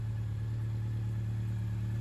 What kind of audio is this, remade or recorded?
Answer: recorded